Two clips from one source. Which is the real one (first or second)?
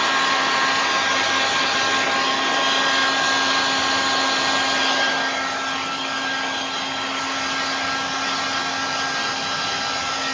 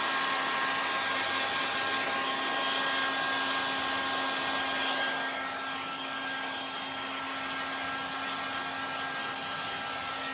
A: second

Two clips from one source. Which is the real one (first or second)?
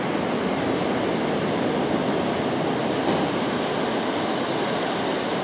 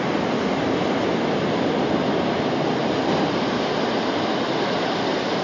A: first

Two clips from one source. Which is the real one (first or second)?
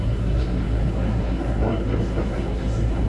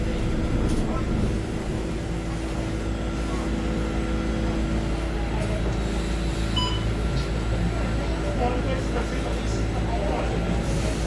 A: second